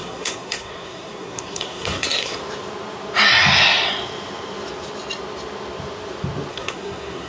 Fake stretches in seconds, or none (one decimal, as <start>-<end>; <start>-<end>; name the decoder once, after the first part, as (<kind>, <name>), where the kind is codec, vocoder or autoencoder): 0.0-2.4 (codec, SNAC); 6.5-7.3